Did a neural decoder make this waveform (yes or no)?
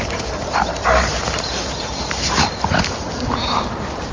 no